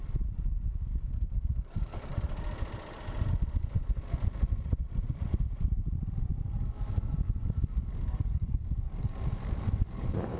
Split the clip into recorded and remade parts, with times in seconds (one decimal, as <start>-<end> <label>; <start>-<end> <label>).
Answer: 0.0-0.7 recorded; 0.7-2.1 remade; 2.1-6.4 recorded; 6.4-10.4 remade

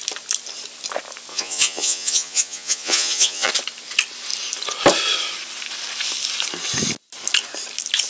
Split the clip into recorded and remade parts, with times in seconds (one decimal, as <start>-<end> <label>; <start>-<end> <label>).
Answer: 0.0-1.3 recorded; 1.3-3.5 remade; 3.5-8.1 recorded

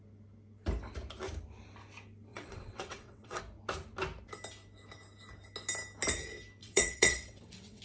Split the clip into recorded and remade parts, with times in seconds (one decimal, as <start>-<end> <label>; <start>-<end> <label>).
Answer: 0.0-2.3 recorded; 2.3-3.4 remade; 3.4-6.6 recorded; 6.6-7.8 remade